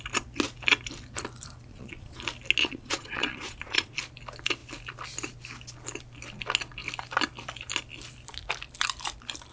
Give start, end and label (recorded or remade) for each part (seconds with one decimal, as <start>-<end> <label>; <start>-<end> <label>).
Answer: 0.0-1.7 recorded; 1.7-2.2 remade; 2.2-2.6 recorded; 2.6-3.9 remade; 3.9-9.5 recorded